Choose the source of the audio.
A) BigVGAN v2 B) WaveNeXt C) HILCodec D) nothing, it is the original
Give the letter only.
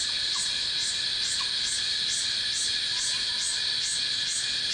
D